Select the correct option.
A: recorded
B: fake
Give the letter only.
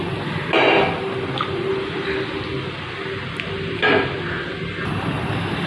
A